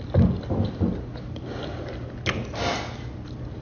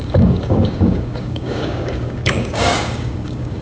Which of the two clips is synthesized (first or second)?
second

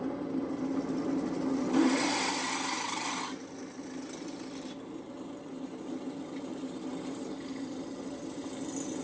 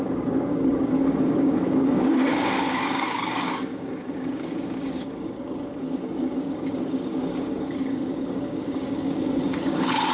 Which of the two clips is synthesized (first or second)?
second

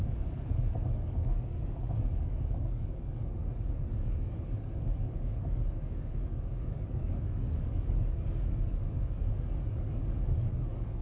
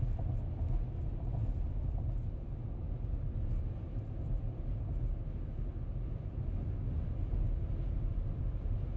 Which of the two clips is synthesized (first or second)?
first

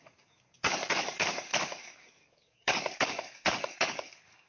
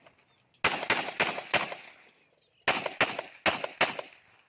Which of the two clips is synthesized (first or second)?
first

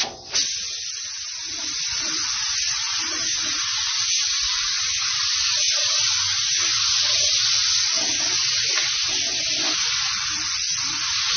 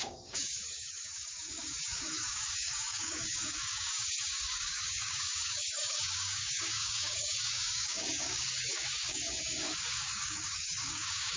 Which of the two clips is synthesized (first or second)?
second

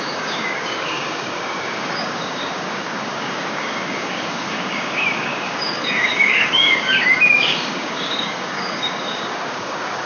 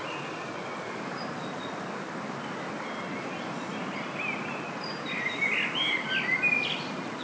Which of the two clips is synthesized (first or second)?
first